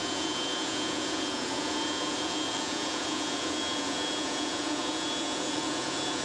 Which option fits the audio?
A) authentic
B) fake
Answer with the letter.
B